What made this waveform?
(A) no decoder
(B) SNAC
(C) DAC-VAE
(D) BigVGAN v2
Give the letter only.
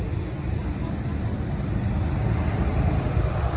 D